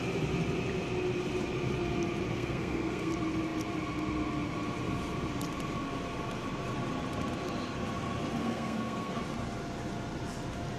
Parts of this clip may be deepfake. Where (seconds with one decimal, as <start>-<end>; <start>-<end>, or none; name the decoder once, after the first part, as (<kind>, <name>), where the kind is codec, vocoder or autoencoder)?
2.3-3.1 (codec, SNAC); 8.4-9.2